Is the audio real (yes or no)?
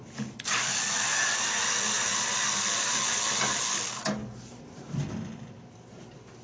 yes